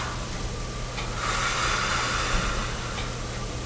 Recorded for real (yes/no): yes